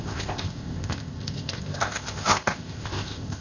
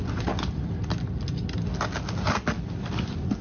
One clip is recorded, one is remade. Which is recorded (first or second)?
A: second